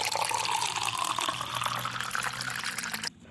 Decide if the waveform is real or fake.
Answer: real